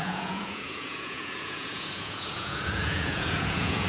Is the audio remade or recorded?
remade